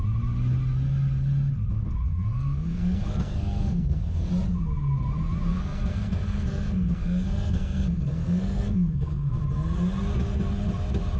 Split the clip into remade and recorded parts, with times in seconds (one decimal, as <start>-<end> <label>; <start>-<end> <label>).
0.0-2.1 recorded; 2.1-4.3 remade; 4.3-5.5 recorded; 5.5-9.4 remade; 9.4-11.2 recorded

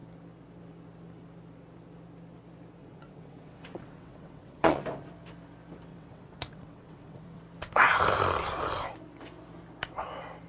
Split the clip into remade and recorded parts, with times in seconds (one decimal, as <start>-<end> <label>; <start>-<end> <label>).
0.0-2.8 recorded; 2.8-4.8 remade; 4.8-5.9 recorded; 5.9-7.4 remade; 7.4-10.5 recorded

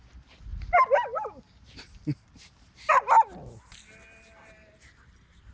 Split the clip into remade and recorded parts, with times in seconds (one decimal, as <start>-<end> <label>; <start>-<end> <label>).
0.0-5.5 recorded

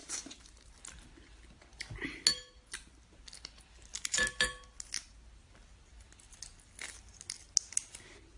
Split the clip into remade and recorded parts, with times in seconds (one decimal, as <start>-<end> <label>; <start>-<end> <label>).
0.0-0.7 remade; 0.7-8.4 recorded

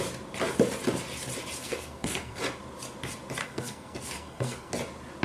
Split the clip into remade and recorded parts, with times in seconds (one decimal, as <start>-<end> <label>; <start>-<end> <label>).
0.0-1.6 recorded; 1.6-2.4 remade; 2.4-3.4 recorded; 3.4-4.7 remade; 4.7-5.2 recorded

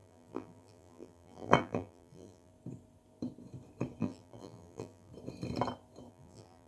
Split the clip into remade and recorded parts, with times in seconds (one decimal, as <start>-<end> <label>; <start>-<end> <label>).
0.0-2.5 remade; 2.5-4.0 recorded; 4.0-5.1 remade; 5.1-6.1 recorded; 6.1-6.7 remade

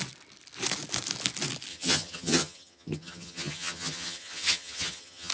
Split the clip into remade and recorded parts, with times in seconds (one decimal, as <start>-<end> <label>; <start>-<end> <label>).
0.0-1.7 recorded; 1.7-5.3 remade

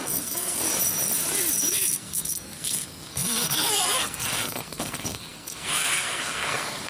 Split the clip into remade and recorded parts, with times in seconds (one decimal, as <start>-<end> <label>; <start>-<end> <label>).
0.0-0.6 remade; 0.6-1.6 recorded; 1.6-6.9 remade